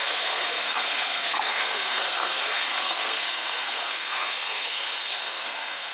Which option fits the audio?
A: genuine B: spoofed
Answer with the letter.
B